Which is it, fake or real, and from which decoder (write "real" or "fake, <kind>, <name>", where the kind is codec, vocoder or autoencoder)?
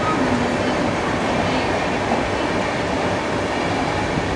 real